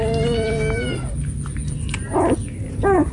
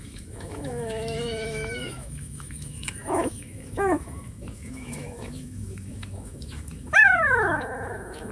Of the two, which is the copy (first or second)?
second